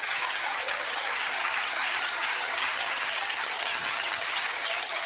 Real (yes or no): no